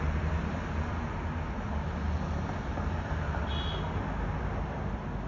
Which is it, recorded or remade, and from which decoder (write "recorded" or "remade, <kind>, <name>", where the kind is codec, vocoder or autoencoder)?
recorded